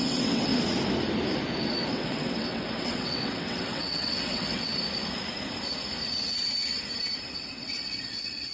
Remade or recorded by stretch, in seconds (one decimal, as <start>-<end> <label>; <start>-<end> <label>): 0.0-0.5 remade; 0.5-1.9 recorded; 1.9-4.7 remade; 4.7-7.3 recorded; 7.3-8.5 remade